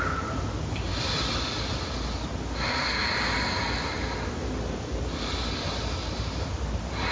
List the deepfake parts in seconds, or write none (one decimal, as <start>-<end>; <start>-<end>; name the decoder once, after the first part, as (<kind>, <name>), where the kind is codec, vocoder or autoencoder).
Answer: none